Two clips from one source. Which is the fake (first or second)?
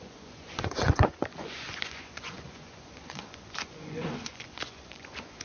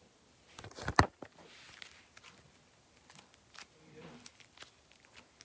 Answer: first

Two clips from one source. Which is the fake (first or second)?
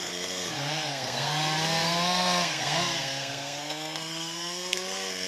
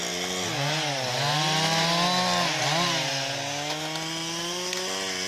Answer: first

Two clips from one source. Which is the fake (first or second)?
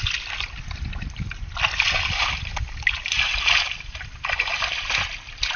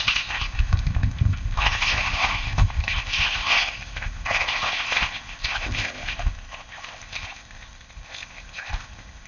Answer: second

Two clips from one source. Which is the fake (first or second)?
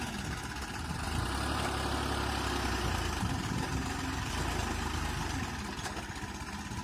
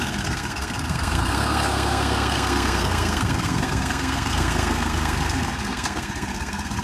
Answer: second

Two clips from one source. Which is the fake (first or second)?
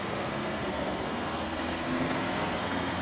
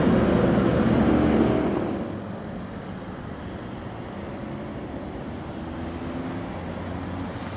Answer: first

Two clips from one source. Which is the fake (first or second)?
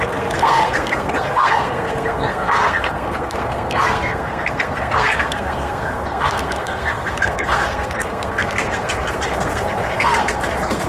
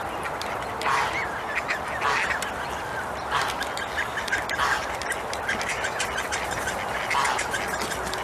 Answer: first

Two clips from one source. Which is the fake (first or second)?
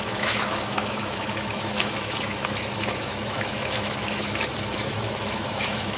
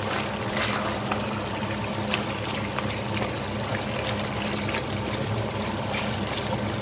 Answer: first